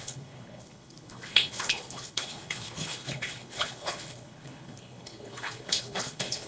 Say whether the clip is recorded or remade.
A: remade